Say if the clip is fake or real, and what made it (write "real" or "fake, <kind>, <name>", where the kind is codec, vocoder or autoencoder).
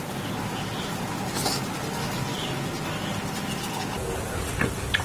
real